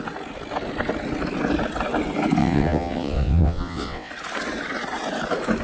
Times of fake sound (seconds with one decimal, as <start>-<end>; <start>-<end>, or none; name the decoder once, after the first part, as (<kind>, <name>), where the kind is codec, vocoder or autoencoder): 2.4-4.1 (vocoder, WaveNeXt)